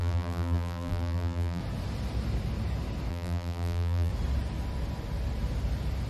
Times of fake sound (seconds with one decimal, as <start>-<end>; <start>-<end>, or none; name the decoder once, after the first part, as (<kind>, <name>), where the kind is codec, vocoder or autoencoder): 0.0-1.6 (vocoder, BigVGAN v2); 3.1-4.1